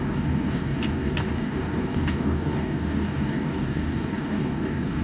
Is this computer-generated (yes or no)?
yes